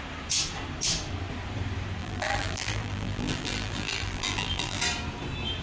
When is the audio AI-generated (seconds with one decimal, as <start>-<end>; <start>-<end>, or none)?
2.0-4.8